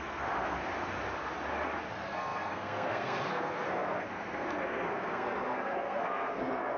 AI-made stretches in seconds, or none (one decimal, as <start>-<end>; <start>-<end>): 0.0-0.6; 1.9-6.8